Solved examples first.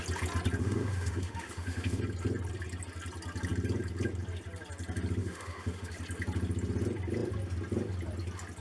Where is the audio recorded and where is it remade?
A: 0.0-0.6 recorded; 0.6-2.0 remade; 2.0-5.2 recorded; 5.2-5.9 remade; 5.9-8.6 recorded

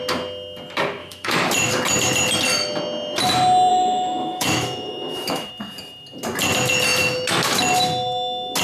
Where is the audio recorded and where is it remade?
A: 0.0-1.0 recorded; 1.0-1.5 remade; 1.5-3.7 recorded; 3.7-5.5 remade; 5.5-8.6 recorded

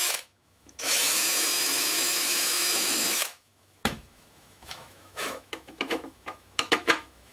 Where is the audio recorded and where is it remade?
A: 0.0-7.3 remade

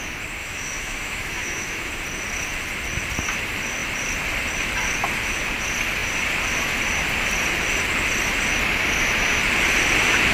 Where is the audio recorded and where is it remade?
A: 0.0-0.4 recorded; 0.4-1.9 remade; 1.9-10.3 recorded

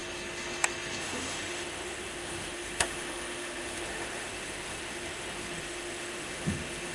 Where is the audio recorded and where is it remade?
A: 0.0-1.0 recorded; 1.0-6.9 remade

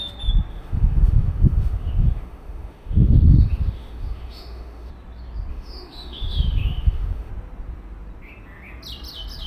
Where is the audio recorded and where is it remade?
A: 0.0-0.5 recorded; 0.5-4.9 remade; 4.9-5.5 recorded; 5.5-7.3 remade; 7.3-9.5 recorded

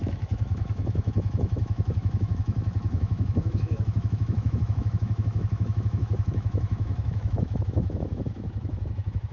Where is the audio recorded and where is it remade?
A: 0.0-9.3 remade